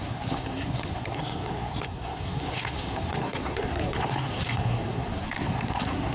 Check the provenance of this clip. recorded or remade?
remade